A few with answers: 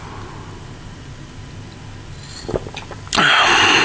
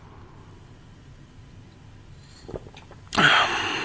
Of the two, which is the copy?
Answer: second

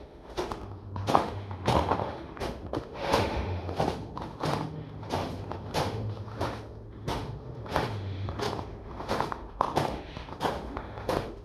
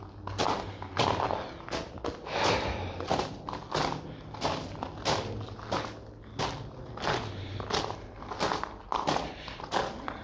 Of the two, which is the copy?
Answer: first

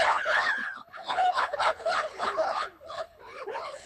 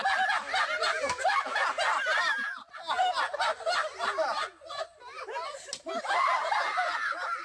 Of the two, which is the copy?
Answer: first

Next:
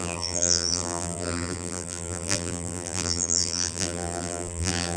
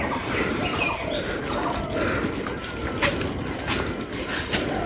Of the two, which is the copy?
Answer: first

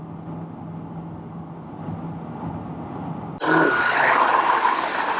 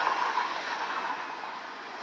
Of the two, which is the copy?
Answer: second